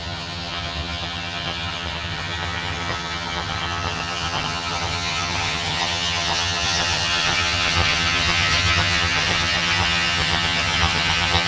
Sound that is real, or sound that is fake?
fake